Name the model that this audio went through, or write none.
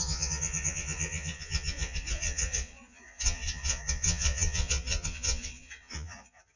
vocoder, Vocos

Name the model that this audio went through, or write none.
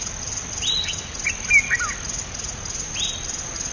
none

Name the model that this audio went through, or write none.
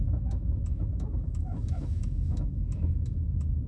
autoencoder, DAC-VAE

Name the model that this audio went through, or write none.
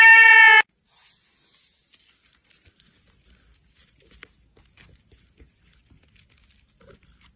none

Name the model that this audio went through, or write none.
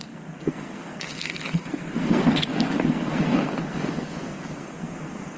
codec, SNAC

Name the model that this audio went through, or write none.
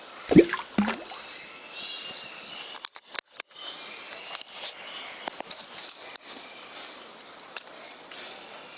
none